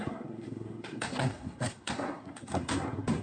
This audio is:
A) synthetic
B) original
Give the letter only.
A